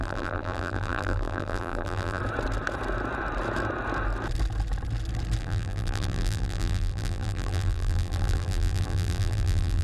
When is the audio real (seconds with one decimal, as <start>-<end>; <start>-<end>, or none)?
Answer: 2.2-5.4